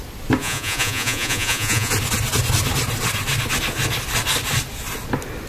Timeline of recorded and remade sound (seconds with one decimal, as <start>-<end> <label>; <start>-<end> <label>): 0.0-0.4 recorded; 0.4-1.9 remade; 1.9-5.5 recorded

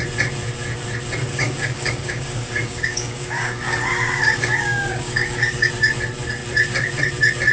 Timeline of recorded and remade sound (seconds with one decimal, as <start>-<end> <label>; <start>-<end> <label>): 0.0-1.2 recorded; 1.2-5.7 remade; 5.7-7.5 recorded

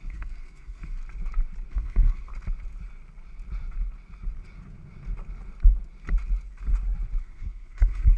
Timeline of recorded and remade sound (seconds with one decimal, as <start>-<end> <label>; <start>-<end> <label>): 0.0-1.0 remade; 1.0-1.7 recorded; 1.7-2.3 remade; 2.3-7.2 recorded; 7.2-8.2 remade

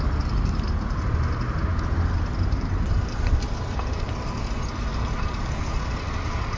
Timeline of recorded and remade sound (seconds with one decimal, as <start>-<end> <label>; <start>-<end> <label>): 0.0-6.6 recorded

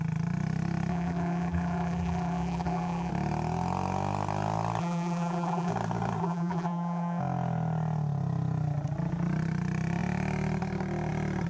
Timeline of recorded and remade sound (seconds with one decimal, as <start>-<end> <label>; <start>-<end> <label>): 0.0-0.9 recorded; 0.9-3.1 remade; 3.1-4.8 recorded; 4.8-5.7 remade; 5.7-6.2 recorded; 6.2-7.2 remade; 7.2-11.5 recorded

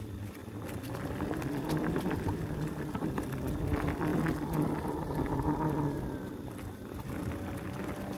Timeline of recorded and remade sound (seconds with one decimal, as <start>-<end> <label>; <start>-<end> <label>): 0.0-8.2 recorded

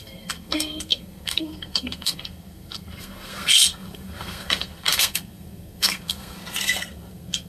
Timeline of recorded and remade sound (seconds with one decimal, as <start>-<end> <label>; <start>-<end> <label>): 0.0-7.5 remade

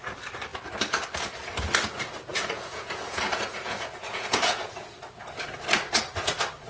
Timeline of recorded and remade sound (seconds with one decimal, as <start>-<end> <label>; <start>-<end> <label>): 0.0-2.3 recorded; 2.3-4.9 remade; 4.9-6.7 recorded